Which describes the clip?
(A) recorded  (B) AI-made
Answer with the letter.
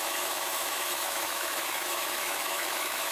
B